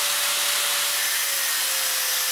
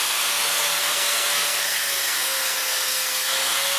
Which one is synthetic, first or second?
second